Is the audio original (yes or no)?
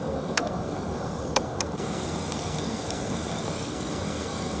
no